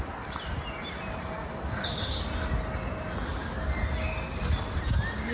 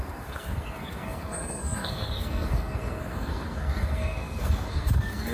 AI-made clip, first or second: second